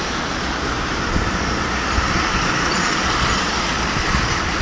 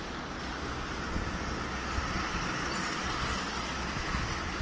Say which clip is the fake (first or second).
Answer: first